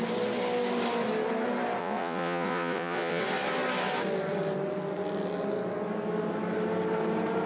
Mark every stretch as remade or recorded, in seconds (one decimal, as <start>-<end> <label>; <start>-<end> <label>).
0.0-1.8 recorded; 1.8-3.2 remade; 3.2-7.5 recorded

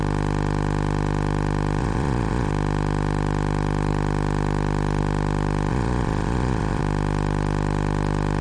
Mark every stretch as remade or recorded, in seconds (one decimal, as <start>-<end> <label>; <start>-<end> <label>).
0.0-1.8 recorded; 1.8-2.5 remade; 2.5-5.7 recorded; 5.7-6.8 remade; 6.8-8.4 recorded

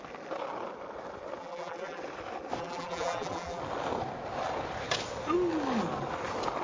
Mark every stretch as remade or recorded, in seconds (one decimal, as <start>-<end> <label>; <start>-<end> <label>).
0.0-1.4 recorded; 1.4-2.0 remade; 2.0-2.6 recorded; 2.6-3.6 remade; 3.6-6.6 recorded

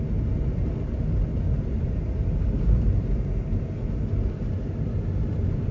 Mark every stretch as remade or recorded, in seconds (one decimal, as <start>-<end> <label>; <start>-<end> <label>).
0.0-1.3 recorded; 1.3-4.0 remade; 4.0-5.7 recorded

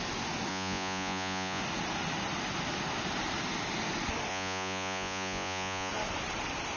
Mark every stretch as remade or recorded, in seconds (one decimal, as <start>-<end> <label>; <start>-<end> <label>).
0.0-0.5 recorded; 0.5-1.6 remade; 1.6-4.3 recorded; 4.3-5.9 remade; 5.9-6.8 recorded

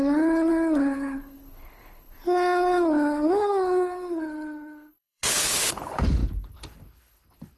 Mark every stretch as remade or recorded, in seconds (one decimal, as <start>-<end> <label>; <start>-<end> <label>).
0.0-7.6 remade

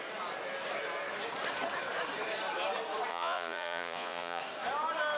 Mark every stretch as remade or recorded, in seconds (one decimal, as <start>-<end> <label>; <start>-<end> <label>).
0.0-3.1 recorded; 3.1-4.4 remade; 4.4-5.2 recorded